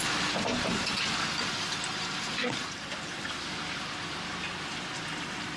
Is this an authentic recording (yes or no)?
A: yes